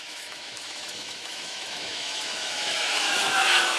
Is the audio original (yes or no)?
no